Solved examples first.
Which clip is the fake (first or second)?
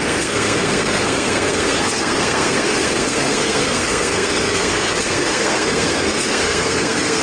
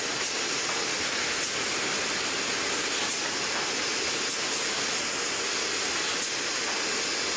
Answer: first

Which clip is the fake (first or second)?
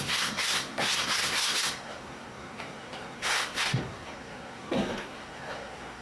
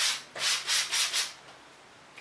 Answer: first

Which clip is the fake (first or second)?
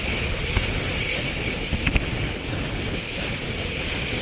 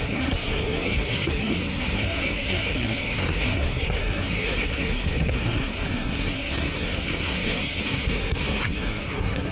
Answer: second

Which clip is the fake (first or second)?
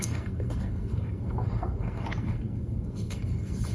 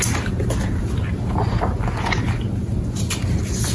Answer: first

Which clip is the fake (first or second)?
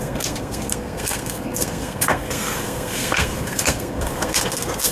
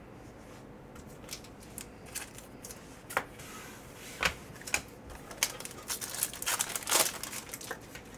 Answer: first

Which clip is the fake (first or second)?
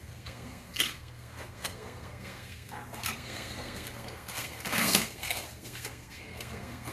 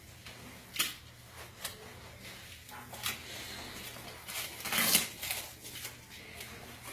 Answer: first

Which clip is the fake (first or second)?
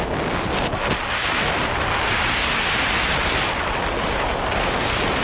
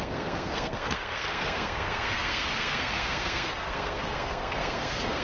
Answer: second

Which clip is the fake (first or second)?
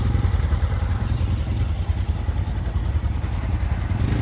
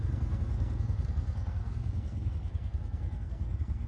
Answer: second